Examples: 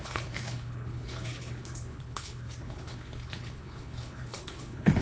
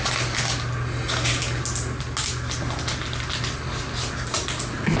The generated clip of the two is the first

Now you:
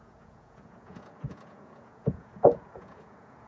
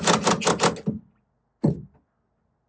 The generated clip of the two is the first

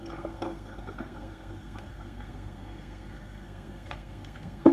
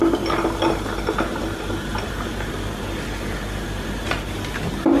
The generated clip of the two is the first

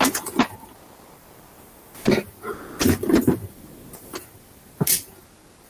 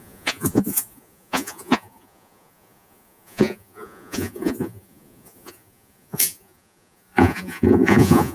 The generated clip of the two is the second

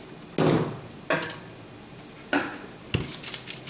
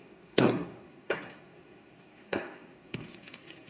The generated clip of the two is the second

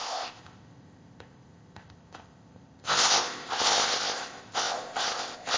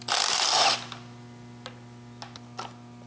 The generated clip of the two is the first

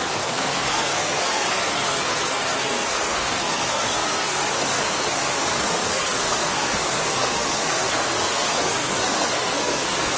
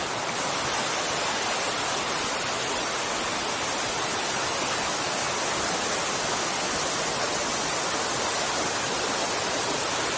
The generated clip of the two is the first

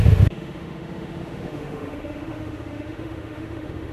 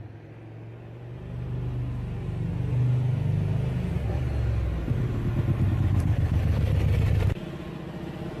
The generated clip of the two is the first